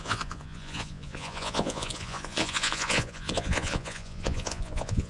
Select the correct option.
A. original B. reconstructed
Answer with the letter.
B